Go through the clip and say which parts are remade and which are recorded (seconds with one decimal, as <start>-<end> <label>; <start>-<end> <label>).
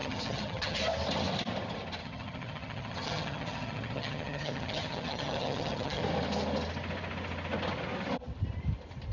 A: 0.0-0.8 remade; 0.8-2.0 recorded; 2.0-6.0 remade; 6.0-9.1 recorded